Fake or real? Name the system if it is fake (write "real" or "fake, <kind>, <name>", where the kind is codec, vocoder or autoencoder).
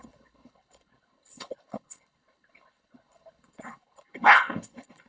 fake, codec, HILCodec